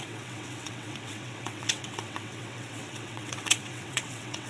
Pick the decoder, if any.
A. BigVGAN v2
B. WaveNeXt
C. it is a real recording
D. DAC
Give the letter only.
B